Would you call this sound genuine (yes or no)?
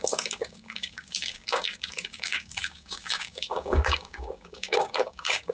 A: no